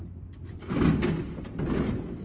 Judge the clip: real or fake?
real